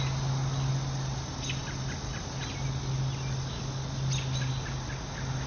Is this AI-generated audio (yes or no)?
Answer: no